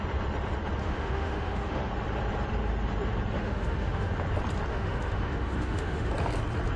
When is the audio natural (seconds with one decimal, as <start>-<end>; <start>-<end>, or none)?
0.0-0.8; 1.9-3.4; 4.1-4.7; 6.1-6.8